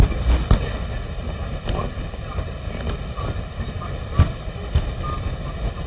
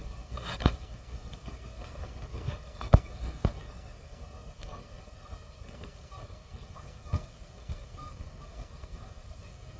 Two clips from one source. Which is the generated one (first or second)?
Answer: second